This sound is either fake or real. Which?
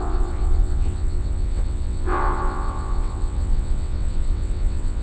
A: fake